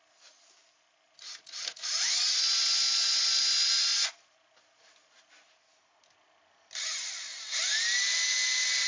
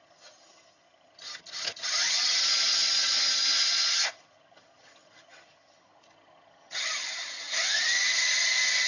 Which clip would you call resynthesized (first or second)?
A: second